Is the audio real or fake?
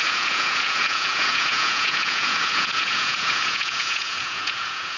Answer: fake